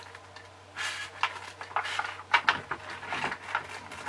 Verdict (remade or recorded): recorded